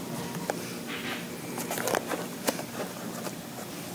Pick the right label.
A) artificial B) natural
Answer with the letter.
B